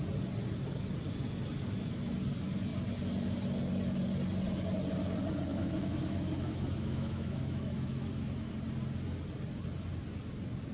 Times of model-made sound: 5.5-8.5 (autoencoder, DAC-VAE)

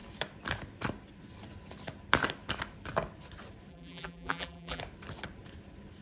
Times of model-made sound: 3.7-4.8 (vocoder, BigVGAN v2)

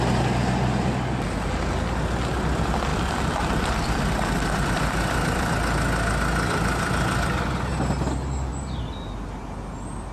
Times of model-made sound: 2.9-5.5 (vocoder, BigVGAN v2)

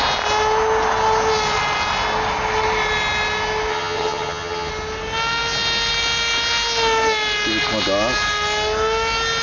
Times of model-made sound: 3.7-4.7 (vocoder, HiFi-GAN)

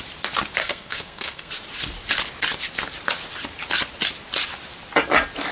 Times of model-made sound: 0.6-1.5 (codec, SNAC)

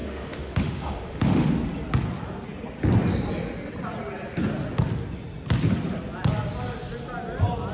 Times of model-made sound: 0.0-1.5 (autoencoder, DAC-VAE)